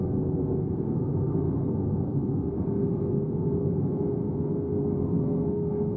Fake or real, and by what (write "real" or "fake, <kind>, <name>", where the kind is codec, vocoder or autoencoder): fake, codec, SNAC